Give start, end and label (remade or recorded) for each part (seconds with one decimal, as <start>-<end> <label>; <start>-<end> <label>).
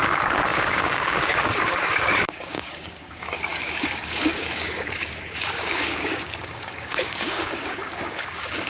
0.0-8.7 remade